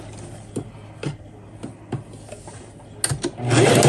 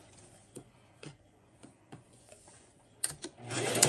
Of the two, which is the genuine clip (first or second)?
first